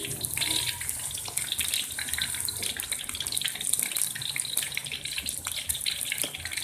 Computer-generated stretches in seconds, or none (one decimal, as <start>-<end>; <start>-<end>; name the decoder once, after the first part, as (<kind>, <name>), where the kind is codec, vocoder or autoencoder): 4.8-5.9 (vocoder, BigVGAN v2)